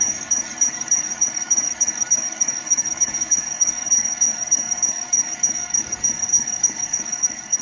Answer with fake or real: fake